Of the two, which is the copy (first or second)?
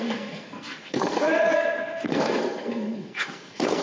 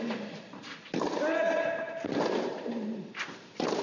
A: first